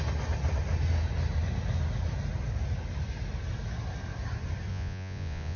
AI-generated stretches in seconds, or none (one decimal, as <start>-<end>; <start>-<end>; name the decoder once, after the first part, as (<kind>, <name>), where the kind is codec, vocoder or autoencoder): 4.7-5.6 (vocoder, Vocos)